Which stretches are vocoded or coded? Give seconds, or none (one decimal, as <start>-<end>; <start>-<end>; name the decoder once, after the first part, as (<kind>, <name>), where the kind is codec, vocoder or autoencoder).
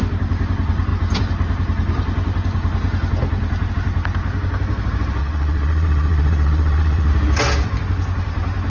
5.2-7.1 (vocoder, WaveNeXt)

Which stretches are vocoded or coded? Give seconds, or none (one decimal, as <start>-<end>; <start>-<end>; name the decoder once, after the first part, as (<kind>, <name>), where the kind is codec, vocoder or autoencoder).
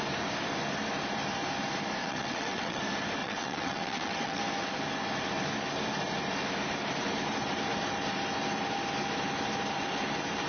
2.0-2.8 (vocoder, WaveNeXt); 3.2-4.4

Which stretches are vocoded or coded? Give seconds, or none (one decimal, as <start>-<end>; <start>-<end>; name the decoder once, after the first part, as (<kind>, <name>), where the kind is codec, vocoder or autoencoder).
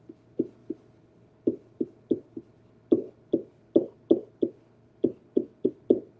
5.2-5.7 (vocoder, WaveNeXt)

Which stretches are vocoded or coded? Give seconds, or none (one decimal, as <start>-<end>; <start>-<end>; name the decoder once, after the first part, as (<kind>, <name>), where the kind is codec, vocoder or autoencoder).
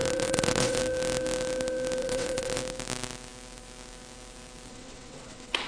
0.0-0.8 (vocoder, WaveNeXt); 2.0-2.6; 4.7-5.7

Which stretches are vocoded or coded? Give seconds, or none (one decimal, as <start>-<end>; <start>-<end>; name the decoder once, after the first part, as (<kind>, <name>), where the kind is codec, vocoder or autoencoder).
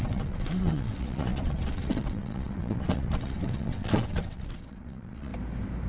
0.0-5.3 (vocoder, WaveNeXt)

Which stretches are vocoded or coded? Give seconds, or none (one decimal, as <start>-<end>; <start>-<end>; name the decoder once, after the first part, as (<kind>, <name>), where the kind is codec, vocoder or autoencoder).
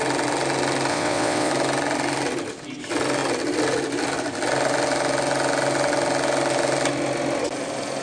0.9-1.5 (vocoder, WaveNeXt)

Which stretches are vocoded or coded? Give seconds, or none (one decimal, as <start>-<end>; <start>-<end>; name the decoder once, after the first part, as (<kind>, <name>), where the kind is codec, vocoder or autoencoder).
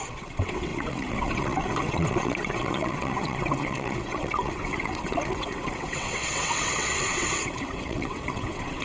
0.0-8.8 (vocoder, WaveNeXt)